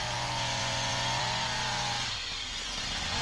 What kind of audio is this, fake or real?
fake